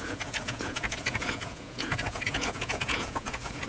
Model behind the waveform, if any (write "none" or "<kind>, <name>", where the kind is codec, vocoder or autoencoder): vocoder, Vocos